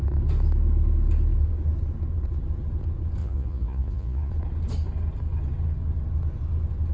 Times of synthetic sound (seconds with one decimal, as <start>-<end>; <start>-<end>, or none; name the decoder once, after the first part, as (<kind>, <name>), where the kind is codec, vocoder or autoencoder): 3.2-4.3 (vocoder, Vocos)